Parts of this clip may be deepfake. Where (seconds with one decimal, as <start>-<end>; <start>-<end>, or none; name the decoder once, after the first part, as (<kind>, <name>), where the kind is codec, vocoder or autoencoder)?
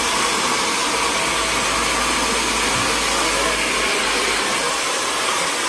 none